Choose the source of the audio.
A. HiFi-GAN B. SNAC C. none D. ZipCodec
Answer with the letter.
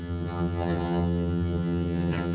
A